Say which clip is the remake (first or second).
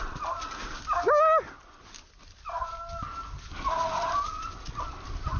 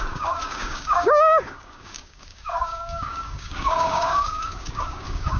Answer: second